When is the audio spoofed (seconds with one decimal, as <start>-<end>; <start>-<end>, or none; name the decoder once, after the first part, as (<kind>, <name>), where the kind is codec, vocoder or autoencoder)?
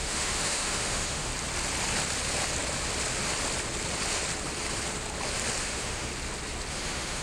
0.0-1.3 (autoencoder, DAC-VAE); 5.6-6.1; 6.7-7.2